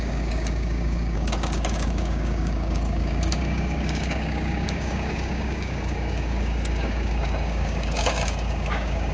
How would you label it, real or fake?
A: fake